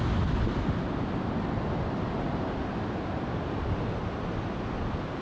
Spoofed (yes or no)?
no